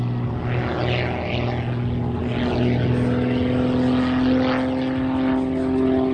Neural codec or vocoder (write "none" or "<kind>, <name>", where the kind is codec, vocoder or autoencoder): none